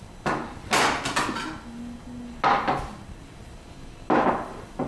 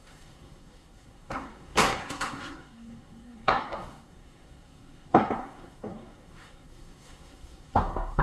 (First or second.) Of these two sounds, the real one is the first